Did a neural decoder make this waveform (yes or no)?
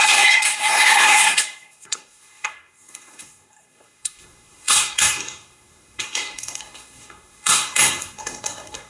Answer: yes